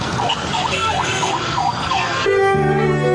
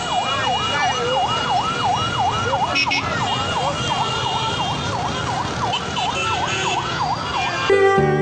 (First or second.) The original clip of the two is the second